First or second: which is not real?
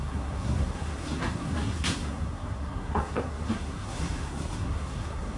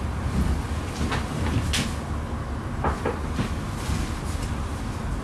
first